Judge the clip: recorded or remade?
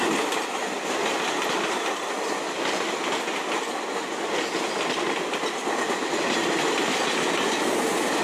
recorded